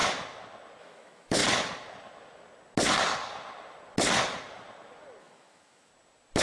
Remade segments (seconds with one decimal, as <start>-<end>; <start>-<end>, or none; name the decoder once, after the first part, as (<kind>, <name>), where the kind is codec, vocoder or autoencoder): 0.8-1.4 (autoencoder, DAC-VAE); 5.2-5.9